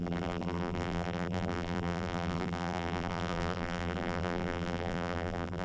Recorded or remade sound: remade